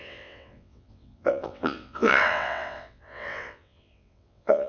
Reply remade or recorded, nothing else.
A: remade